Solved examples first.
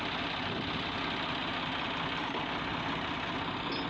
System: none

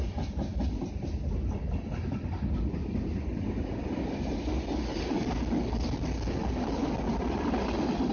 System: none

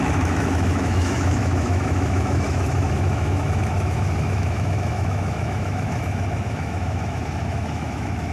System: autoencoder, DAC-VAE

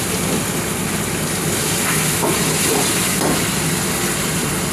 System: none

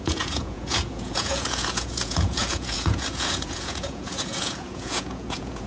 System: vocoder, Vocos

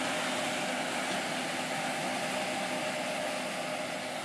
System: none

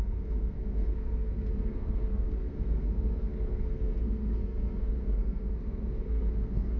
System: codec, SNAC